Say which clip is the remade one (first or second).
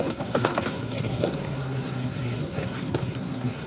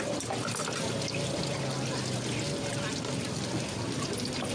first